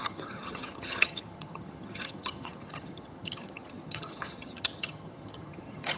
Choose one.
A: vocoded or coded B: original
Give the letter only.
A